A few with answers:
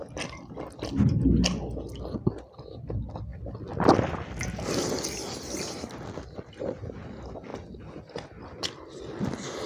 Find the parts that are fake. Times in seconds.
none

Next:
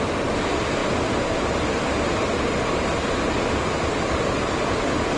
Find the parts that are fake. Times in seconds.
none